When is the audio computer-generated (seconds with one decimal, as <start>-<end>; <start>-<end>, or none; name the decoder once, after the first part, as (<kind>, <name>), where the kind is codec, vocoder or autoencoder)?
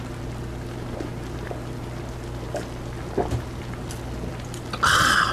none